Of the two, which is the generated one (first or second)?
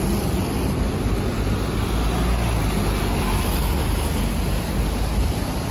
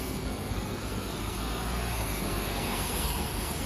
second